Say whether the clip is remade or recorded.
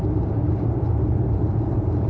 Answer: remade